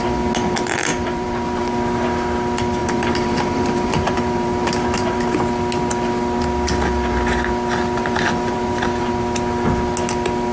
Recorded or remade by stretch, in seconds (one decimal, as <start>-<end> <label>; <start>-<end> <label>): 0.0-0.9 recorded; 0.9-1.6 remade; 1.6-2.8 recorded; 2.8-5.2 remade; 5.2-8.0 recorded; 8.0-9.1 remade; 9.1-10.5 recorded